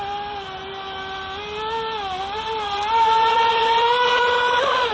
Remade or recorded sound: recorded